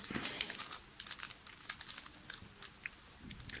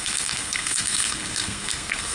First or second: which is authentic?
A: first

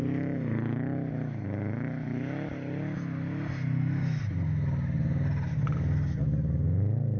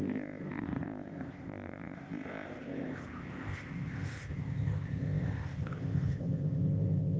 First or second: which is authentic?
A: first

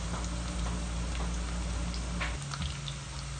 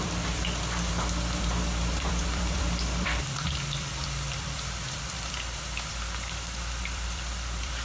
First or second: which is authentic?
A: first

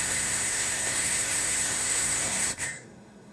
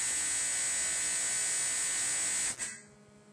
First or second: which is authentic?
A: second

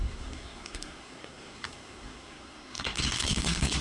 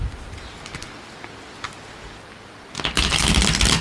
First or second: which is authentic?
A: second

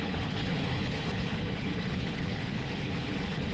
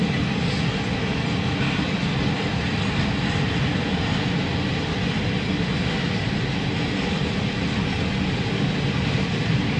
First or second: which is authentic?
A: second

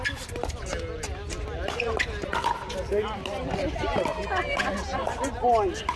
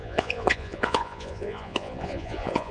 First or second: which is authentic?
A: first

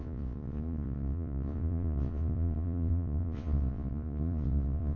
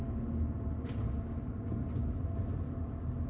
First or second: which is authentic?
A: second